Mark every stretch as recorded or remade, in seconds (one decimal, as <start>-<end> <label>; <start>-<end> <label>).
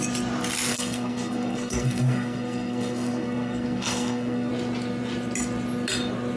0.0-0.7 recorded; 0.7-4.5 remade; 4.5-6.4 recorded